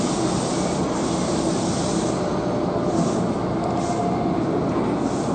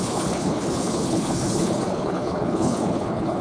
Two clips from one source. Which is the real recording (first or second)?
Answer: first